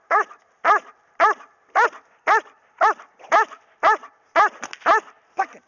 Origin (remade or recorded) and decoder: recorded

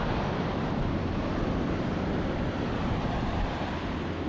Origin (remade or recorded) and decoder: recorded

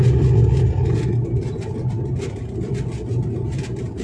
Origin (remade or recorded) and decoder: recorded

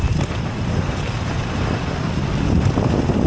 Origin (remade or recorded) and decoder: recorded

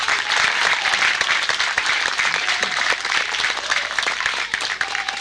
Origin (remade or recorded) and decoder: remade, vocoder, BigVGAN v2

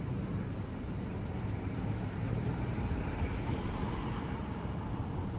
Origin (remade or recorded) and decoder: remade, vocoder, BigVGAN v2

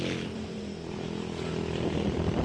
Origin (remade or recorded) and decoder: remade, vocoder, BigVGAN v2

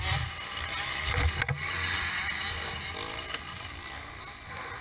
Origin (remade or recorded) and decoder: recorded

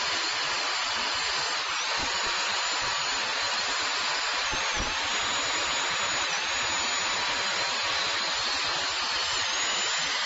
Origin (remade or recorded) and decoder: recorded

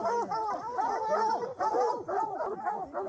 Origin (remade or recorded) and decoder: recorded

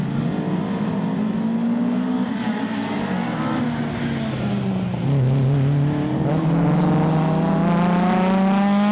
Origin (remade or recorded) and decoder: recorded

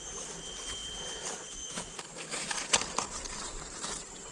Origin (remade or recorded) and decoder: remade, vocoder, BigVGAN v2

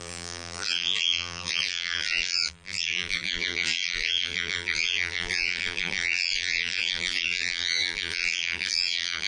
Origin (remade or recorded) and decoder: remade, vocoder, BigVGAN v2